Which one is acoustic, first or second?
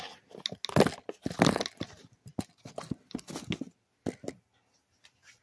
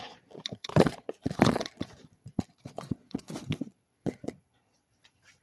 first